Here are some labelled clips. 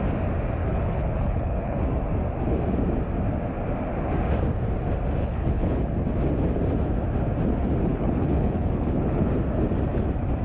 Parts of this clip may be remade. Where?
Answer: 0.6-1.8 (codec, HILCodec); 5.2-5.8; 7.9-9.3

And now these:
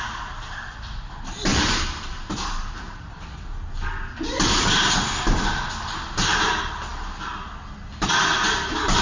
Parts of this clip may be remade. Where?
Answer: 1.5-3.4 (vocoder, BigVGAN v2)

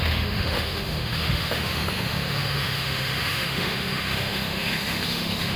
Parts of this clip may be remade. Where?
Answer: 0.0-5.6 (autoencoder, DAC-VAE)

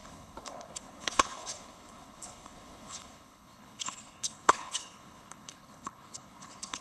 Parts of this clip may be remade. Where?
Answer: 0.0-6.8 (codec, HILCodec)

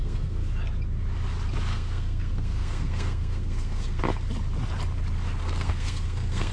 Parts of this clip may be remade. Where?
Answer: 0.0-0.5 (codec, SNAC); 1.7-4.0; 5.4-6.5